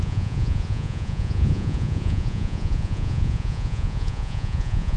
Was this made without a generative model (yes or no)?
no